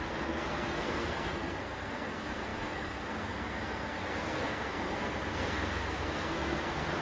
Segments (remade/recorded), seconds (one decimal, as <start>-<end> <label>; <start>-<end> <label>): 0.0-7.0 remade